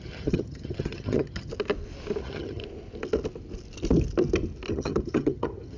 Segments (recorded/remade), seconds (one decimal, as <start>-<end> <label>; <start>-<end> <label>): 0.0-1.5 remade; 1.5-2.2 recorded; 2.2-2.6 remade; 2.6-4.7 recorded; 4.7-5.8 remade